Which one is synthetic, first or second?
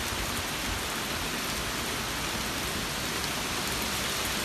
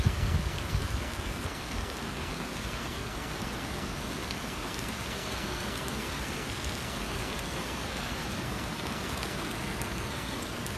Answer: second